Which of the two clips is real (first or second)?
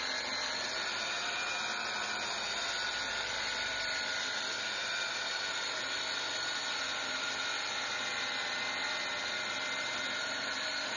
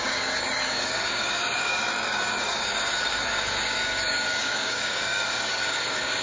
first